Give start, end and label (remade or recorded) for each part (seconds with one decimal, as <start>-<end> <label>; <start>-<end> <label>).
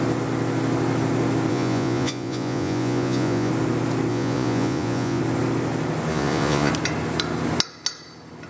0.0-1.5 recorded; 1.5-3.5 remade; 3.5-4.1 recorded; 4.1-5.2 remade; 5.2-6.1 recorded; 6.1-6.7 remade; 6.7-8.5 recorded